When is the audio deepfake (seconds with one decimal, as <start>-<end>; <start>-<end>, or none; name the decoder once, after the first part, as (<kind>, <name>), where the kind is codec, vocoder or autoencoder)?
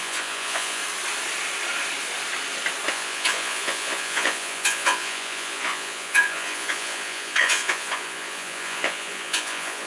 0.0-0.8 (vocoder, Vocos); 2.9-9.9